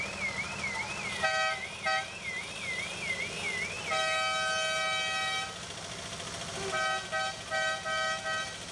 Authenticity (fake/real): real